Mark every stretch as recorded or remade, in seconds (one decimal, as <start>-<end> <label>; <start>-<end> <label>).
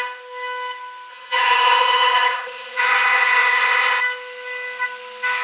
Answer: 0.0-1.1 recorded; 1.1-4.0 remade; 4.0-5.4 recorded